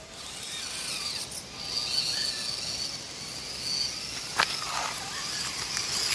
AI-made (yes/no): no